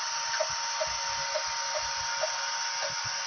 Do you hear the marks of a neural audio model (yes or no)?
no